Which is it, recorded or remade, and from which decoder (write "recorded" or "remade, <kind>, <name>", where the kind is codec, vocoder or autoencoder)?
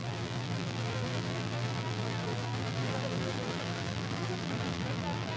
remade, vocoder, BigVGAN v2